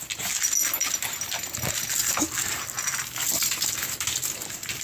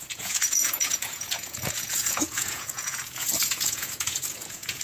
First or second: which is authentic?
first